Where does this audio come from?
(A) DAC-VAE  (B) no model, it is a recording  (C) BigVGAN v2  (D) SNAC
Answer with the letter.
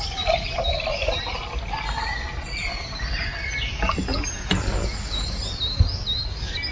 B